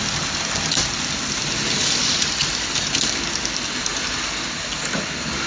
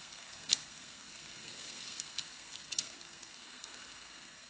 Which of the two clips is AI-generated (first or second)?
second